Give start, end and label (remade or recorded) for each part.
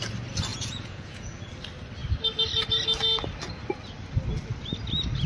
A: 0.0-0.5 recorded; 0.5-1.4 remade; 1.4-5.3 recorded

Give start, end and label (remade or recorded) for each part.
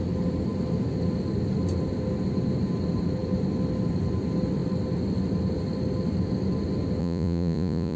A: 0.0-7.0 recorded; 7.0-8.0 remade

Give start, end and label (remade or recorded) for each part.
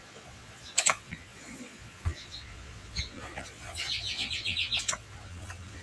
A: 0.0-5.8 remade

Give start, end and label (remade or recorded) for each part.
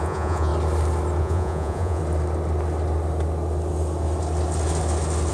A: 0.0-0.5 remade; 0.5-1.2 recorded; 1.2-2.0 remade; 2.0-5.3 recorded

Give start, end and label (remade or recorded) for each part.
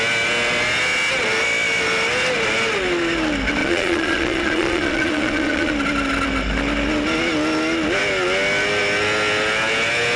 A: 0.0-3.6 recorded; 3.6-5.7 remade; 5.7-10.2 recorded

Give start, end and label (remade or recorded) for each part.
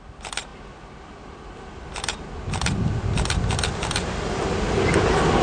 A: 0.0-5.4 recorded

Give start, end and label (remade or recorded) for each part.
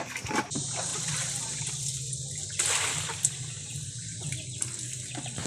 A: 0.0-5.5 recorded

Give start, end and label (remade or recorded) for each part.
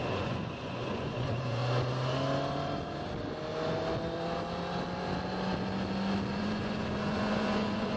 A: 0.0-1.6 remade; 1.6-6.4 recorded; 6.4-8.0 remade